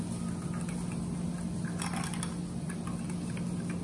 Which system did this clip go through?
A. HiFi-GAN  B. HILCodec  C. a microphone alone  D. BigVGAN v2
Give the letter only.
C